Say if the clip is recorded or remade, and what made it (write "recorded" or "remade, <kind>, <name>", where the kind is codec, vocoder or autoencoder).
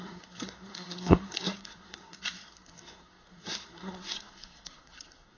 remade, codec, SNAC